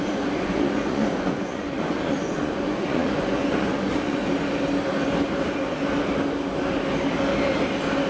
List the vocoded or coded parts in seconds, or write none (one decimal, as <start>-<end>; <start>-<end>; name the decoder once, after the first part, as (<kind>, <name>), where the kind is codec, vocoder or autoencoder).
0.0-4.2 (vocoder, Vocos)